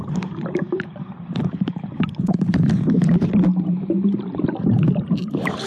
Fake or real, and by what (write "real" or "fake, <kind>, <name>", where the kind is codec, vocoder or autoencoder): fake, vocoder, BigVGAN v2